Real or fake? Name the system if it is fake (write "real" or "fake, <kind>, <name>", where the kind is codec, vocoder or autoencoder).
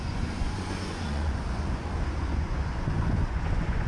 fake, vocoder, Vocos